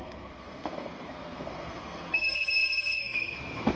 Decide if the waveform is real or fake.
fake